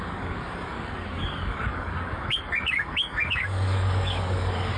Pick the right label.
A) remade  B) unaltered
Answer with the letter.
A